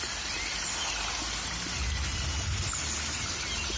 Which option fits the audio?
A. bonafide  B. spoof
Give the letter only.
A